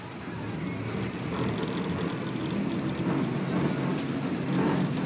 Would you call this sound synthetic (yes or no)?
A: no